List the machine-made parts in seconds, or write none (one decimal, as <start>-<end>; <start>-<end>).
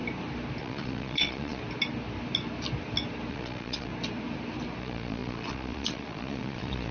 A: 0.6-1.6; 3.3-3.9; 4.8-6.9